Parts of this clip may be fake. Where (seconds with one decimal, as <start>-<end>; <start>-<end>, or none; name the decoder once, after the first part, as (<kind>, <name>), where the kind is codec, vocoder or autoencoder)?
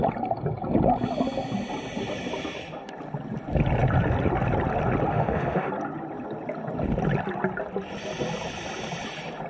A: 5.1-5.7 (autoencoder, DAC-VAE)